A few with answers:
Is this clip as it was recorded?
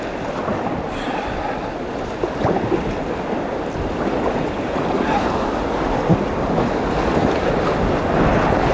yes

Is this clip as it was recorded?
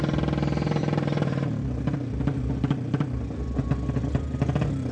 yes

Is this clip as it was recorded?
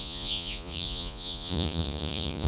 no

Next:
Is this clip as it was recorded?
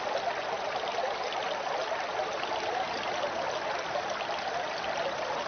yes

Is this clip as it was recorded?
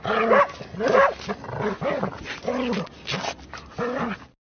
yes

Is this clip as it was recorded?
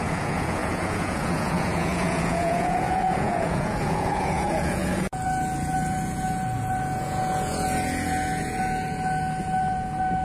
no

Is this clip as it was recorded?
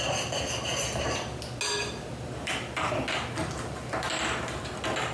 yes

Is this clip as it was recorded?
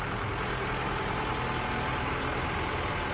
yes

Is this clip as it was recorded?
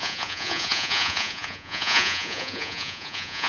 no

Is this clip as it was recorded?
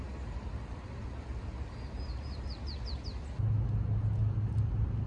yes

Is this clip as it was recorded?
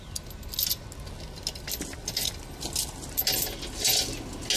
yes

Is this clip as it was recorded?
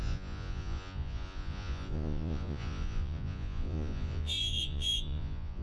no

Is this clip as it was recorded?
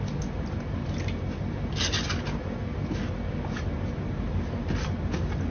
yes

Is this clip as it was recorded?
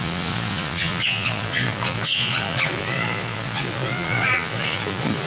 no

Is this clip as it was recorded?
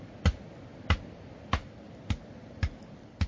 yes